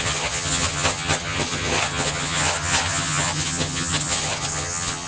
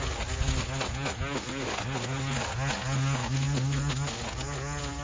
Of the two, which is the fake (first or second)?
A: first